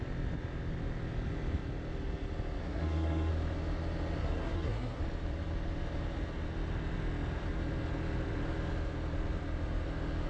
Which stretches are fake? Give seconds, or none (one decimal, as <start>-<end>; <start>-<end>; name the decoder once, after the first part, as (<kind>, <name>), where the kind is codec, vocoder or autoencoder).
2.6-3.3 (codec, SNAC); 4.2-5.0